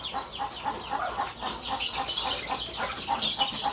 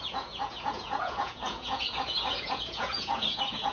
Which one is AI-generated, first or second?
second